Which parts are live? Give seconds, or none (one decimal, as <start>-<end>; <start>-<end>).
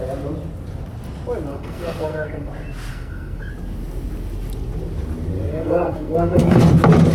0.0-1.5; 2.5-2.9; 3.5-5.5; 6.6-7.1